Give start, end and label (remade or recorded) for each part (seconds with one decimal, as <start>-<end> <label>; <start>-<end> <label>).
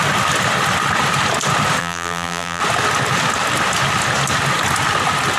0.0-1.8 recorded; 1.8-2.6 remade; 2.6-5.4 recorded